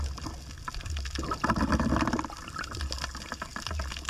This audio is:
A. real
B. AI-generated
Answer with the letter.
A